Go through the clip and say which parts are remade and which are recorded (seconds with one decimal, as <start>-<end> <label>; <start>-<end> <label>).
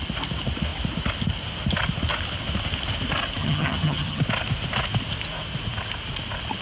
0.0-3.4 recorded; 3.4-4.2 remade; 4.2-6.6 recorded